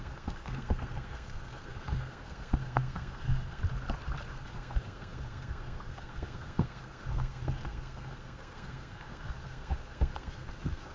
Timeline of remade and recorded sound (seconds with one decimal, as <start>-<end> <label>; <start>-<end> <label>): 0.0-3.6 remade; 3.6-4.3 recorded; 4.3-10.9 remade